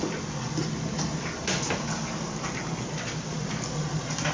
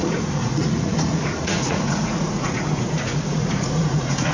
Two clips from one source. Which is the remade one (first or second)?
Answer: second